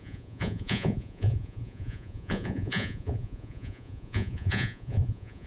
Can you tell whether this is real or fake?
fake